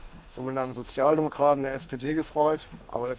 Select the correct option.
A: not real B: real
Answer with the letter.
A